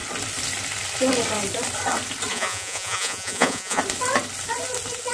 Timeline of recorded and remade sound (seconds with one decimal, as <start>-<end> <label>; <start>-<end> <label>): 0.0-2.3 recorded; 2.3-3.8 remade; 3.8-5.1 recorded